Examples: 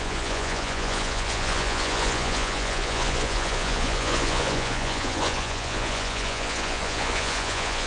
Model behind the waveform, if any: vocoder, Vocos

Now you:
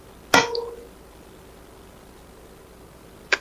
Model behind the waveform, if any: none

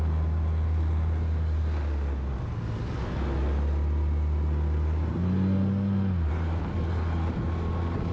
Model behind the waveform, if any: none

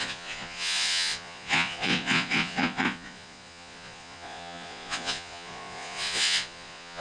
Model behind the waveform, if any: vocoder, Vocos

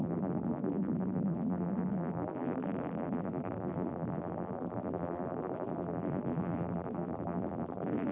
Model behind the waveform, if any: vocoder, BigVGAN v2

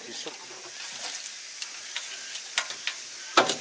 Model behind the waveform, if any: none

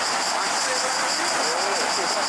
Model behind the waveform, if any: none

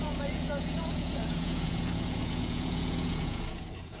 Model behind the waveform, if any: vocoder, Vocos